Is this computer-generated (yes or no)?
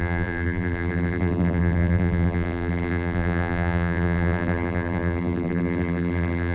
yes